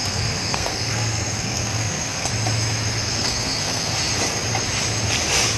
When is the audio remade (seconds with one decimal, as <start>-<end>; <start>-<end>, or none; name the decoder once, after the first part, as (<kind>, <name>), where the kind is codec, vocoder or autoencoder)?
0.0-2.3 (codec, SNAC); 3.0-3.9